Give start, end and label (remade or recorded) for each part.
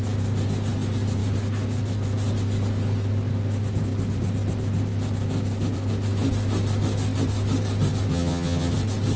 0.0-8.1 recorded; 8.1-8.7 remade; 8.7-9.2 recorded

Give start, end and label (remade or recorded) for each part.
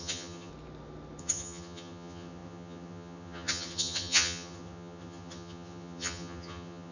0.0-0.5 remade; 0.5-1.2 recorded; 1.2-6.9 remade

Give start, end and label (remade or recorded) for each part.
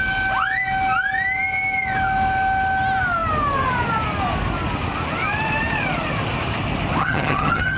0.0-7.0 recorded; 7.0-7.8 remade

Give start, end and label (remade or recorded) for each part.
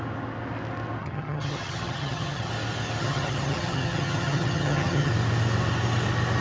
0.0-1.0 recorded; 1.0-2.5 remade; 2.5-3.0 recorded; 3.0-5.1 remade; 5.1-6.4 recorded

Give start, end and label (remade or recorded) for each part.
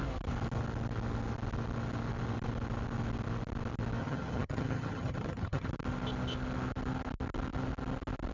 0.0-4.0 recorded; 4.0-5.7 remade; 5.7-8.3 recorded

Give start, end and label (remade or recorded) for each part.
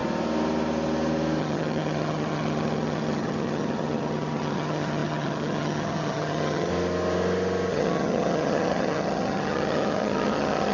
0.0-1.4 recorded; 1.4-6.7 remade; 6.7-7.7 recorded; 7.7-10.7 remade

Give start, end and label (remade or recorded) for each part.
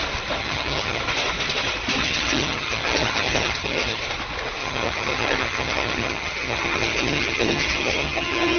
0.0-0.4 recorded; 0.4-1.0 remade; 1.0-2.0 recorded; 2.0-4.0 remade; 4.0-4.6 recorded; 4.6-8.6 remade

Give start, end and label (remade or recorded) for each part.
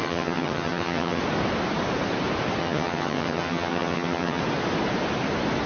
0.0-1.2 remade; 1.2-2.6 recorded; 2.6-4.4 remade; 4.4-5.7 recorded